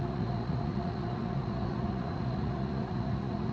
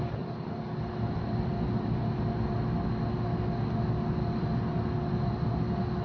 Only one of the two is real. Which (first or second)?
second